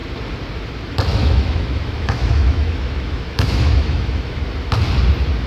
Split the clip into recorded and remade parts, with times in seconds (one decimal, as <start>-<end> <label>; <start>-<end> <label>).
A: 0.0-1.1 recorded; 1.1-4.4 remade; 4.4-5.5 recorded